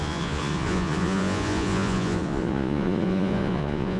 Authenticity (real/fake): fake